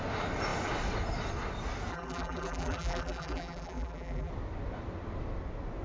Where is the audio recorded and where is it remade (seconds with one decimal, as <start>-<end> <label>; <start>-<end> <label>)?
0.0-1.9 recorded; 1.9-4.3 remade; 4.3-5.8 recorded